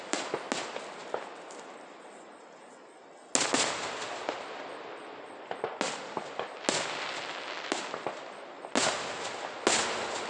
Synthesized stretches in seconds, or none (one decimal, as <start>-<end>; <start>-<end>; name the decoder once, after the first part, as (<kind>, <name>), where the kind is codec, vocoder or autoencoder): none

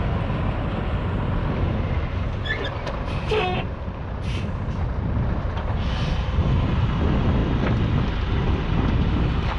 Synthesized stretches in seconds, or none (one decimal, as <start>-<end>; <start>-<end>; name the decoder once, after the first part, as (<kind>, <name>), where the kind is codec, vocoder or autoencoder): none

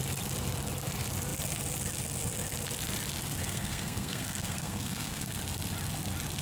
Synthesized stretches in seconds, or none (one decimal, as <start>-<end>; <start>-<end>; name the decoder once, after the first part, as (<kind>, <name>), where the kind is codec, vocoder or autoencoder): 3.4-5.4 (codec, SNAC)

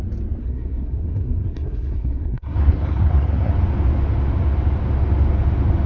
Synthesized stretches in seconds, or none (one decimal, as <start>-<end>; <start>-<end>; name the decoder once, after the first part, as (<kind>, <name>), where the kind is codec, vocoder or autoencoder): 0.4-3.5 (codec, SNAC)